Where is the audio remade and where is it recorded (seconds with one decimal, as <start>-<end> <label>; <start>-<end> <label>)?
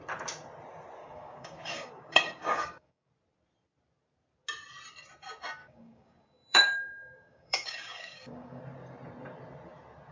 0.0-1.0 recorded; 1.0-3.1 remade; 3.1-5.6 recorded; 5.6-8.6 remade; 8.6-10.1 recorded